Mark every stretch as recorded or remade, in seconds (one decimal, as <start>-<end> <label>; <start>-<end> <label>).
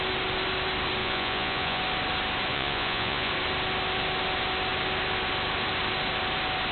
0.0-1.0 recorded; 1.0-1.8 remade; 1.8-2.5 recorded; 2.5-3.3 remade; 3.3-6.7 recorded